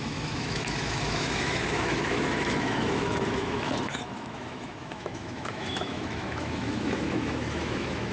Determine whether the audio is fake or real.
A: fake